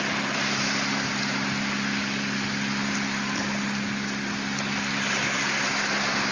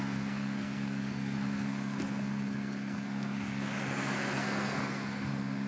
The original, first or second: first